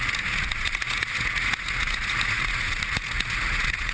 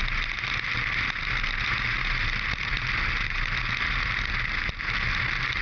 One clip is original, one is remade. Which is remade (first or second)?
first